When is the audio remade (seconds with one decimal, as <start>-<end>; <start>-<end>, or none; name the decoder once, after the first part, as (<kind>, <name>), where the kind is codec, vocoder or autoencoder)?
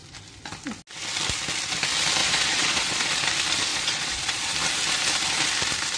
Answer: 2.2-3.1 (vocoder, Vocos); 3.7-4.5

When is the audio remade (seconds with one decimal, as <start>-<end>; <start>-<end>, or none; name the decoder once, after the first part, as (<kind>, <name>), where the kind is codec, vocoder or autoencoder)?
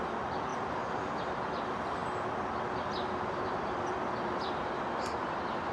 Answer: none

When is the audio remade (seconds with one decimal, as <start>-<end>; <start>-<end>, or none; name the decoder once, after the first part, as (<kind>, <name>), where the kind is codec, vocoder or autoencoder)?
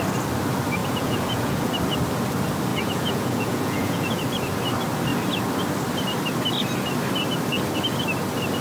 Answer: 0.8-1.7 (vocoder, Vocos); 2.7-4.2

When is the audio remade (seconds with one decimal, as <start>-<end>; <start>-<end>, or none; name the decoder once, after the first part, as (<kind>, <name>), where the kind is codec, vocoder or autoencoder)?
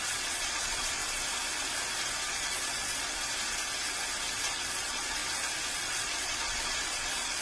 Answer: 0.0-1.0 (vocoder, Vocos); 2.3-3.2; 4.4-5.2; 5.7-7.4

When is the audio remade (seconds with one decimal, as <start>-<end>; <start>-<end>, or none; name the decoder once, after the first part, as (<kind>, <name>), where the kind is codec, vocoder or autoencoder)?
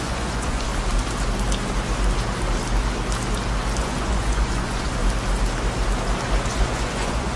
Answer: 0.0-0.7 (vocoder, Vocos); 3.8-5.0; 6.5-7.4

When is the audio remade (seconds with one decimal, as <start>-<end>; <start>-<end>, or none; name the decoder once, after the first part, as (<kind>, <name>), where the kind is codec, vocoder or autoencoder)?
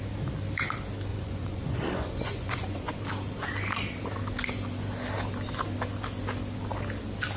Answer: 1.1-3.0 (vocoder, Vocos)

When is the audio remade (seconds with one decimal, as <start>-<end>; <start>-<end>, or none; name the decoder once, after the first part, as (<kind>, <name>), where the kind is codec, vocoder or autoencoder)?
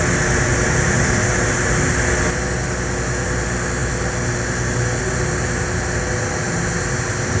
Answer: none